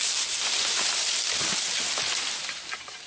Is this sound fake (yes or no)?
no